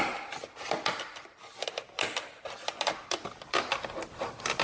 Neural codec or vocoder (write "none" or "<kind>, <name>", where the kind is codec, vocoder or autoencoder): none